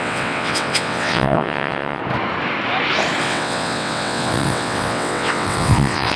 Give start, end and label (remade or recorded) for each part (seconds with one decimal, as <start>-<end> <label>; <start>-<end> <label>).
0.0-2.0 remade; 2.0-3.2 recorded; 3.2-6.2 remade